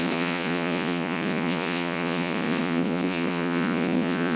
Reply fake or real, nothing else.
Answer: fake